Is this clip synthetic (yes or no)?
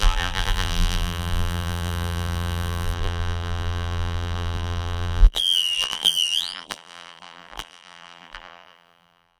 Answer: yes